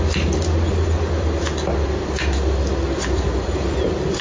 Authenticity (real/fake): real